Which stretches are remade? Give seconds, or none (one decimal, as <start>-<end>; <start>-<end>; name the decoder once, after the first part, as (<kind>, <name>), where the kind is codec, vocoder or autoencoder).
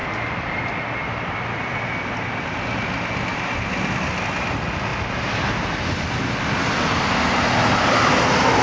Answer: none